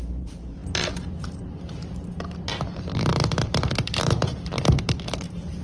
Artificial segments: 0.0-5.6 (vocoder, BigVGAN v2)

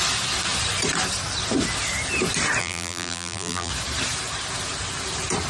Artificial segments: 2.6-3.7 (vocoder, BigVGAN v2)

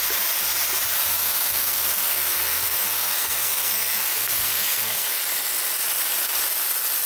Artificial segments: 0.9-5.2 (codec, SNAC)

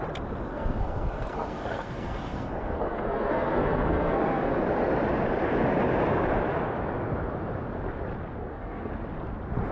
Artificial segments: 0.5-4.6 (codec, SNAC); 8.4-8.9

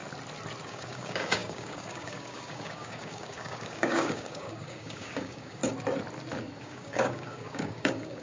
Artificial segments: 0.6-5.6 (codec, DAC); 6.6-8.2

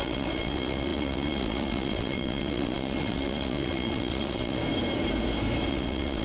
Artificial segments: 0.0-4.6 (vocoder, WaveNeXt); 5.7-6.2